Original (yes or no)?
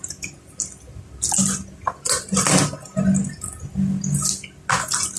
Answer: yes